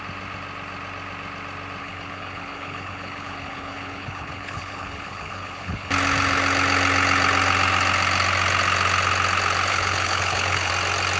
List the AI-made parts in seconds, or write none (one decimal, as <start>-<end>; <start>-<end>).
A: 1.8-5.9; 9.7-10.7